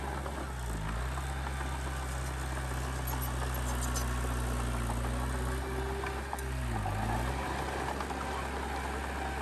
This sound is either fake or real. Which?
real